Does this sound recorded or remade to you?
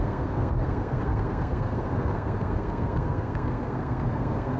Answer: remade